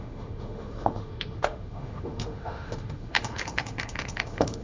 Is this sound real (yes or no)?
no